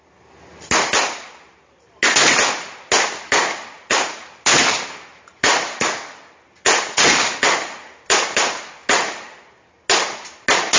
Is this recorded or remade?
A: recorded